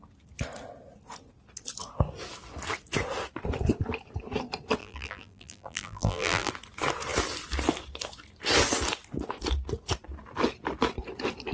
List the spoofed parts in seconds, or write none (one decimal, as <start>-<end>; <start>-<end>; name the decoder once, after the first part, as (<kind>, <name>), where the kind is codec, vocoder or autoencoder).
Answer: 4.8-6.5 (vocoder, BigVGAN v2)